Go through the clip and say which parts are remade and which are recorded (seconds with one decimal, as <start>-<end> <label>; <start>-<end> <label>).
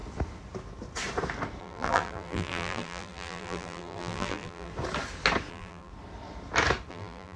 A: 0.0-1.6 recorded; 1.6-4.7 remade; 4.7-5.5 recorded; 5.5-5.9 remade; 5.9-6.9 recorded; 6.9-7.4 remade